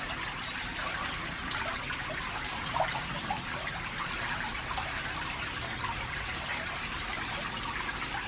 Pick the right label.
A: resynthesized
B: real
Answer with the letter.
B